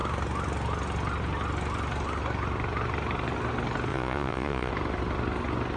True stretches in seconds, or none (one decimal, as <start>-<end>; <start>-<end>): 0.0-3.9; 4.7-5.8